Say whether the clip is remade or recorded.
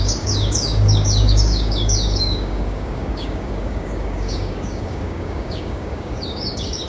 remade